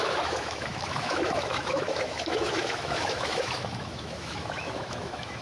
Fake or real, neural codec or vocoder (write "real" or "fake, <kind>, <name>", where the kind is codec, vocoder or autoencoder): fake, autoencoder, DAC-VAE